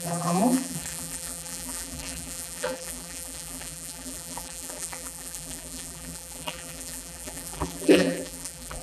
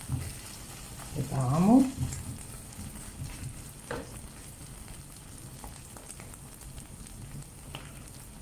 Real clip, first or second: second